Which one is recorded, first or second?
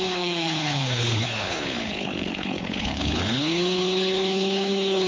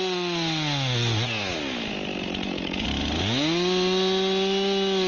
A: second